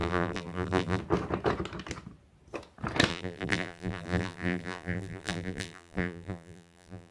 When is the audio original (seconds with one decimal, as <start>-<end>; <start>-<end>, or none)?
1.0-3.1